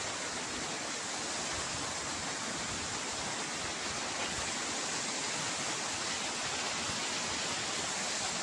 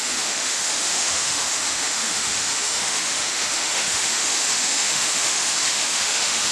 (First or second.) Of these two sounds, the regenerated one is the second